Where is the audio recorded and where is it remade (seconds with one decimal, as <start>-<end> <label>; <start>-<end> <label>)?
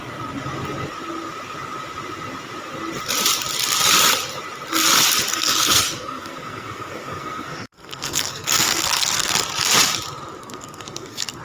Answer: 0.0-5.3 recorded; 5.3-9.3 remade; 9.3-10.4 recorded; 10.4-11.4 remade